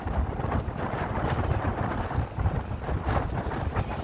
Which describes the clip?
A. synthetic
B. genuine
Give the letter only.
B